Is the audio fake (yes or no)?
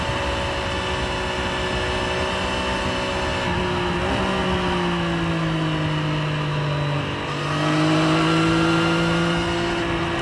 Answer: no